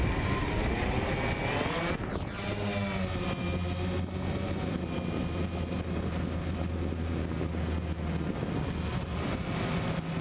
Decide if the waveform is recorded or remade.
recorded